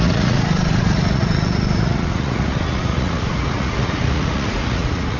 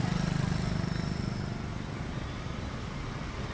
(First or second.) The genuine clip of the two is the second